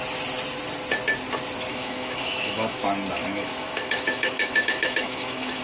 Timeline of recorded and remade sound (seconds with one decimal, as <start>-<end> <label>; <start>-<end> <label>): 0.0-1.7 recorded; 1.7-2.8 remade; 2.8-3.2 recorded; 3.2-5.6 remade